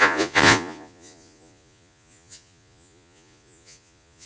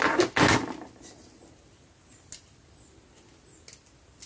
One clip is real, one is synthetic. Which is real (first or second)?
second